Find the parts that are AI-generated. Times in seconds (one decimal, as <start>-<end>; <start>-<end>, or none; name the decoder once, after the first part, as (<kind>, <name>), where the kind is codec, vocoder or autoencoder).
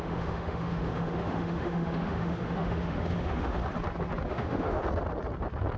0.0-3.6 (autoencoder, DAC-VAE); 4.3-4.8